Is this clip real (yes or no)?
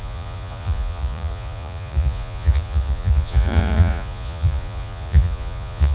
no